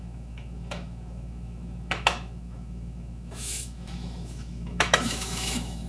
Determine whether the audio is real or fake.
fake